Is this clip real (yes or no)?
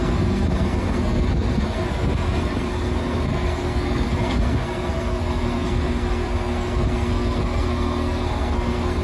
no